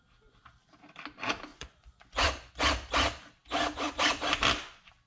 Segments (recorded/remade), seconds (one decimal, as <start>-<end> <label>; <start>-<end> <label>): 0.0-1.5 recorded; 1.5-2.5 remade; 2.5-5.1 recorded